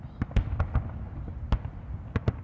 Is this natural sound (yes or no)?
yes